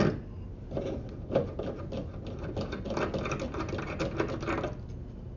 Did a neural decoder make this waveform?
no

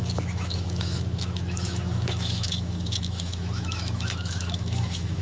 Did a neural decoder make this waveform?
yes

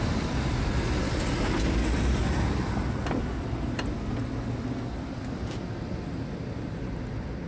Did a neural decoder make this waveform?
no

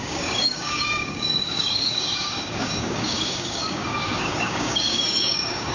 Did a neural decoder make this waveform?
yes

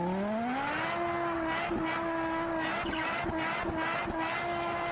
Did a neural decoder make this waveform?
no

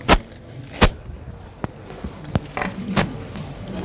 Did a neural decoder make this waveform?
no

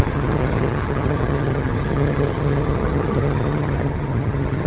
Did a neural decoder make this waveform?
yes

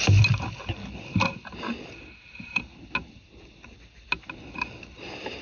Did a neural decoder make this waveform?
no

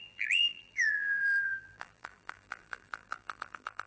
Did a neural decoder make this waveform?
yes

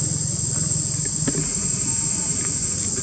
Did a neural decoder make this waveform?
no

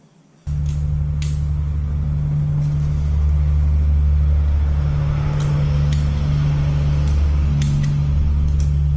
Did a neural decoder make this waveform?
no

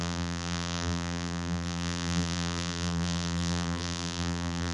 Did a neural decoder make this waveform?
yes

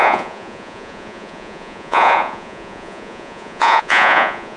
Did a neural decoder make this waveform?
yes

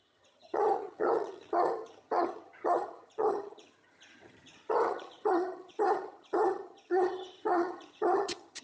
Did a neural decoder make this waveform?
yes